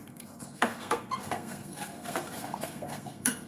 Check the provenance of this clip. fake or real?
fake